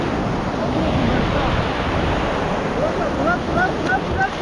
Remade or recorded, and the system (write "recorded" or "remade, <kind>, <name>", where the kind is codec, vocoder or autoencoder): recorded